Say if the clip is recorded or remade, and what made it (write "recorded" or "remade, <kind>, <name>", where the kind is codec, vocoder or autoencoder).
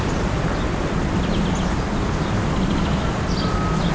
recorded